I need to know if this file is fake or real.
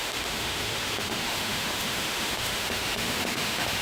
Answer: fake